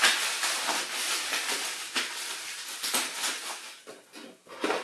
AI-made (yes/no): no